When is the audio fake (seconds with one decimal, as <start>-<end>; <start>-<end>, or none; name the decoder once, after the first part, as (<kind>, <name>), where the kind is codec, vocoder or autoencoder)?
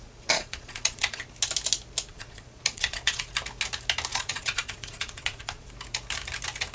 0.0-1.2 (vocoder, Vocos); 2.1-3.3; 4.1-5.7